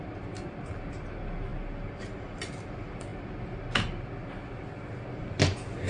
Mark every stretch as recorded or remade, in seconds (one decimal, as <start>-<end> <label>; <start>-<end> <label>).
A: 0.0-5.9 recorded